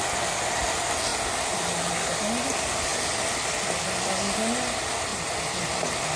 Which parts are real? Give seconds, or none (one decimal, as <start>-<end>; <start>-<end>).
0.0-6.2